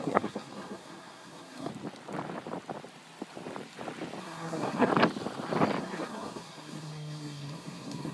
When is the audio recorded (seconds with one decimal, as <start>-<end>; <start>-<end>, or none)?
1.7-4.2; 4.9-5.8